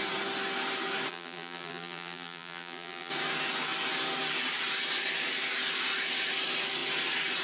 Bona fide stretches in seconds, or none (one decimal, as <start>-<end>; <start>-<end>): 0.0-1.1; 3.1-7.4